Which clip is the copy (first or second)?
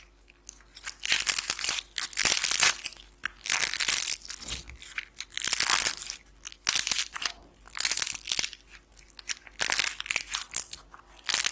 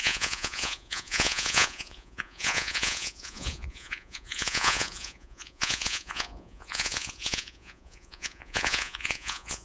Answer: second